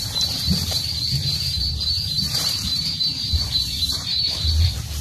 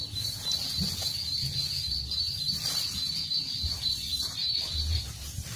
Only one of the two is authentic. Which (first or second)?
second